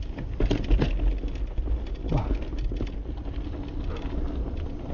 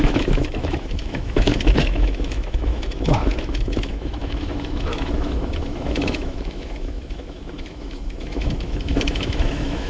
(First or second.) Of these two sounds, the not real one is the second